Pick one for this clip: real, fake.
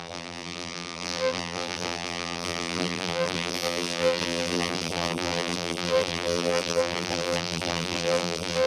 fake